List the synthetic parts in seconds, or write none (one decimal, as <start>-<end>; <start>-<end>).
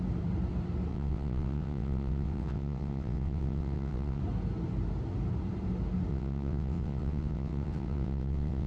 0.9-4.2; 6.1-8.7